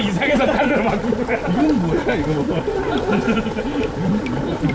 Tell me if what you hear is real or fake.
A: real